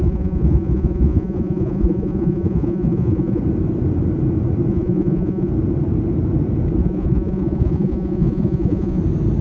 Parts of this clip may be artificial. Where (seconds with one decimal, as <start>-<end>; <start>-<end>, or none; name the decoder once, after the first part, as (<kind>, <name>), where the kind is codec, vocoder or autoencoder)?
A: 0.0-3.4 (vocoder, Vocos); 4.7-5.5; 6.8-9.0